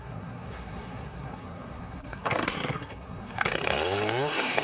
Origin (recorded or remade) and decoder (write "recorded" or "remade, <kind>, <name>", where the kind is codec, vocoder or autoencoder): remade, codec, SNAC